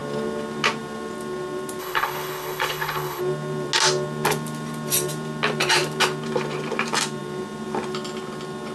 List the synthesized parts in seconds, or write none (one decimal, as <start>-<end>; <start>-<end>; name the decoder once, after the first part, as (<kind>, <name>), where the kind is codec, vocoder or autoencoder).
1.8-3.2 (codec, HILCodec)